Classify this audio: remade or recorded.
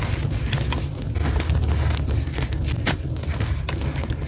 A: recorded